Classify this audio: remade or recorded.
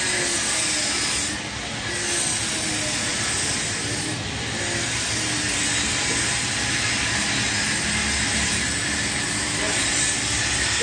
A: recorded